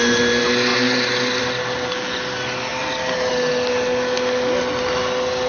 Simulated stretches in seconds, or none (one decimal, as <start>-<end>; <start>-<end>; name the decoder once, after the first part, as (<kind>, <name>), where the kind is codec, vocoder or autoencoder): none